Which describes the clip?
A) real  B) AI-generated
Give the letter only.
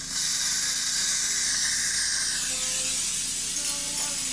A